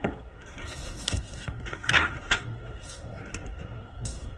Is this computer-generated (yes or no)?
yes